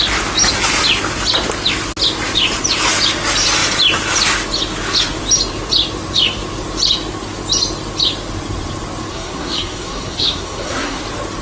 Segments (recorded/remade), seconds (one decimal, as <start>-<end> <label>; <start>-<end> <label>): 0.0-9.1 recorded; 9.1-11.0 remade; 11.0-11.4 recorded